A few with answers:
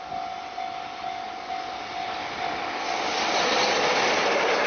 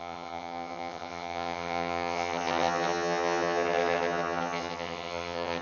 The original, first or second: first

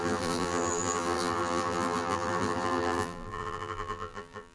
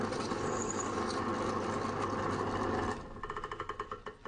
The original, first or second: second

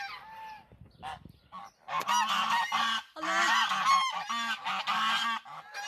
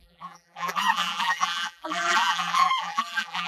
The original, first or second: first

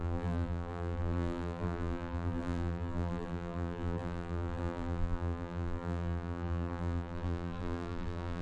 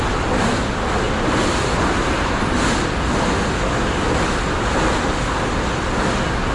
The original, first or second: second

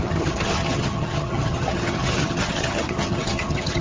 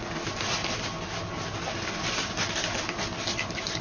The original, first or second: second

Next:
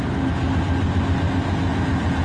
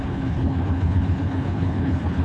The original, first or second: first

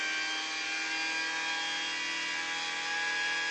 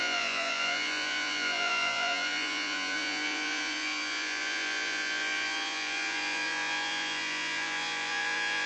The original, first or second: first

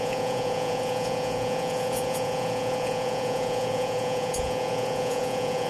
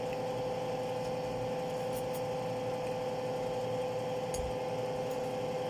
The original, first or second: second